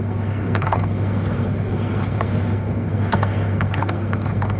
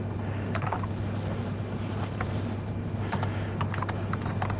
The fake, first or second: first